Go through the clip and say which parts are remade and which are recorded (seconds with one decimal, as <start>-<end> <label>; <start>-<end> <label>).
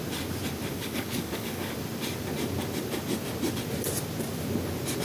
0.0-0.7 recorded; 0.7-1.7 remade; 1.7-5.0 recorded